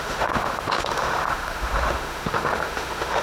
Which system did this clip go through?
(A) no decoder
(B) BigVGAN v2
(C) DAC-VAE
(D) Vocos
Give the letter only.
C